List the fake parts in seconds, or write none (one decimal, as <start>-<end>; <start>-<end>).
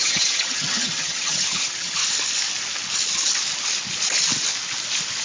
0.0-2.0